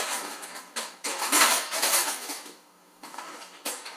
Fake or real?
fake